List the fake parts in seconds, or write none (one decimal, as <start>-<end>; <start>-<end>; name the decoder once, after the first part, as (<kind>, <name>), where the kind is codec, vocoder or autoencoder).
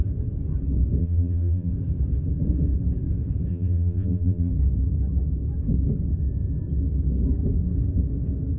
1.0-1.7 (vocoder, BigVGAN v2); 3.5-4.5